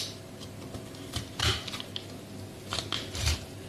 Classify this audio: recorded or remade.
recorded